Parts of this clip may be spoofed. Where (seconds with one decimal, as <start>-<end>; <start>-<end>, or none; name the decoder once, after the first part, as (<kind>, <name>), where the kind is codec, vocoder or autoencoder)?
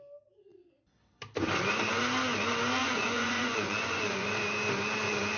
2.8-4.3 (vocoder, Vocos)